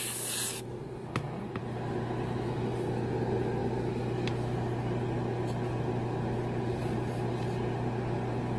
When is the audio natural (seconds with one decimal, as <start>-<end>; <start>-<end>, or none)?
0.0-8.6